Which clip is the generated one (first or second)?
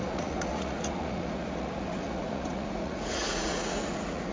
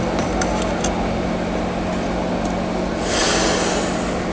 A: first